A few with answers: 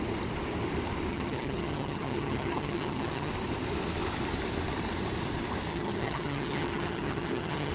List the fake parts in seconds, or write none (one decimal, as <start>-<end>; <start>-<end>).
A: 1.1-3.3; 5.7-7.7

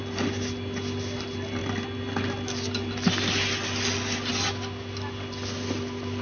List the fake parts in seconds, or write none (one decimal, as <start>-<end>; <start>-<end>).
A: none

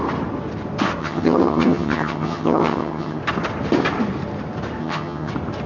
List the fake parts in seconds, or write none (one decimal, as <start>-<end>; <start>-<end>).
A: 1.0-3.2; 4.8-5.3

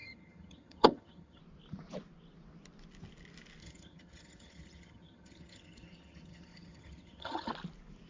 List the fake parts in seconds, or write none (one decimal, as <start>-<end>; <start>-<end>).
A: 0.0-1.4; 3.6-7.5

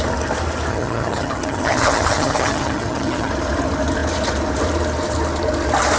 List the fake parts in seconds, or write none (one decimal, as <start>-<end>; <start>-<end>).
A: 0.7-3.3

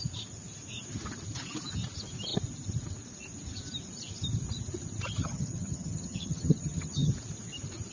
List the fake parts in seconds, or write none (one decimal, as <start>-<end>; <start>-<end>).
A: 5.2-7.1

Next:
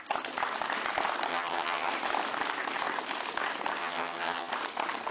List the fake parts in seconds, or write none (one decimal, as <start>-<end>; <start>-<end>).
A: 1.3-1.9; 3.8-4.5

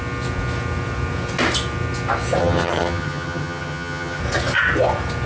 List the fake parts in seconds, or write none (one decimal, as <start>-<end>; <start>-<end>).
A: 2.4-4.2